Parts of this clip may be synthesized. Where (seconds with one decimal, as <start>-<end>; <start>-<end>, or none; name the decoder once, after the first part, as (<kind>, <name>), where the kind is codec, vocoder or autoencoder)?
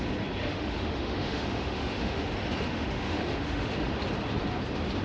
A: 0.4-2.3 (autoencoder, DAC-VAE); 2.7-3.9